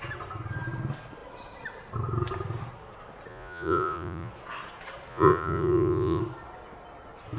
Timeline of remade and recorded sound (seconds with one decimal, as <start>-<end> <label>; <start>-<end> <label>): 0.0-3.3 recorded; 3.3-4.3 remade; 4.3-5.1 recorded; 5.1-6.2 remade; 6.2-7.4 recorded

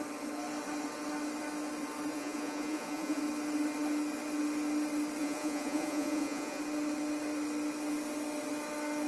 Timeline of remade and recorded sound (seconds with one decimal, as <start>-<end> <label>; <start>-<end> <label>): 0.0-2.1 recorded; 2.1-3.2 remade; 3.2-5.2 recorded; 5.2-6.6 remade; 6.6-9.1 recorded

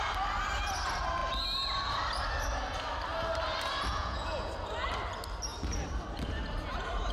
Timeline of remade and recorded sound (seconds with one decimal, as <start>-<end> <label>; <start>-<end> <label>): 0.0-3.9 recorded; 3.9-4.5 remade; 4.5-7.1 recorded

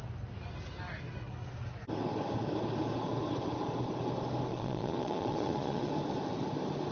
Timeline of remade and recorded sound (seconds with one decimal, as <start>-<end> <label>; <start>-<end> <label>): 0.0-4.5 recorded; 4.5-5.9 remade; 5.9-6.9 recorded

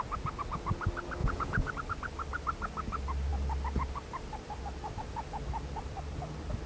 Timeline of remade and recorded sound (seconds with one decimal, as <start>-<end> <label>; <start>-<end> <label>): 0.0-1.2 recorded; 1.2-1.7 remade; 1.7-6.7 recorded

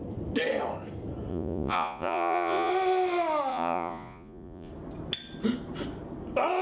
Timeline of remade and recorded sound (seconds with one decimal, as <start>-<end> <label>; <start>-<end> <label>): 0.0-1.3 recorded; 1.3-2.7 remade; 2.7-3.5 recorded; 3.5-4.7 remade; 4.7-6.6 recorded

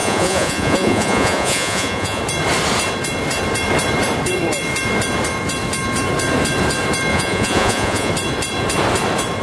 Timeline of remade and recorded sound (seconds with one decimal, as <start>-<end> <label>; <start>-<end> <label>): 0.0-2.2 remade; 2.2-7.1 recorded; 7.1-8.1 remade; 8.1-9.4 recorded